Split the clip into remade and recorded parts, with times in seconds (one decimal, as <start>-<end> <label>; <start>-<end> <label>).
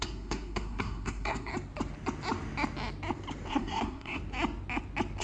0.0-1.5 remade; 1.5-3.5 recorded; 3.5-4.2 remade; 4.2-5.2 recorded